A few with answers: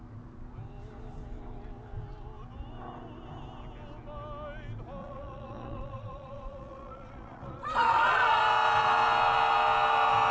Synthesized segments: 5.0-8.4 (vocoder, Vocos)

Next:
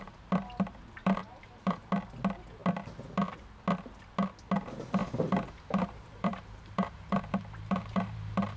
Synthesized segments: 1.0-1.9 (vocoder, BigVGAN v2); 5.0-8.6

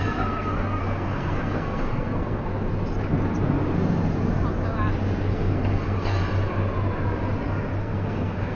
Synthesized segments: 0.0-2.5 (codec, SNAC); 5.3-6.2; 7.8-8.5

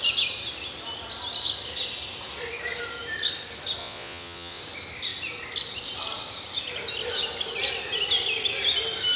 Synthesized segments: 3.8-4.6 (vocoder, Vocos)